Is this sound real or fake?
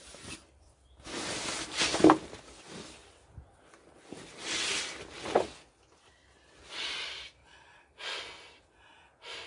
real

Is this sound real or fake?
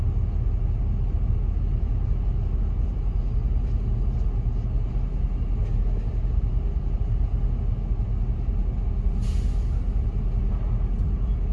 real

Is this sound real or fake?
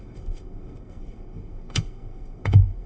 fake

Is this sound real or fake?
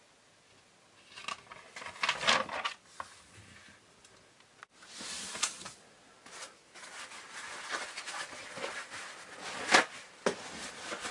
real